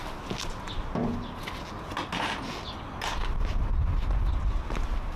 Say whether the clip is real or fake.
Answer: real